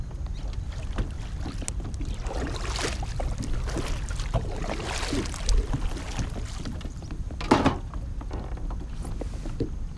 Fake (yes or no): no